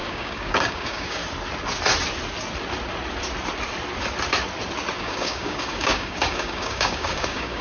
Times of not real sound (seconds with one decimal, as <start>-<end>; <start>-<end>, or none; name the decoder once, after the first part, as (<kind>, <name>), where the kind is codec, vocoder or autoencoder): 0.0-1.2 (codec, DAC); 5.0-7.6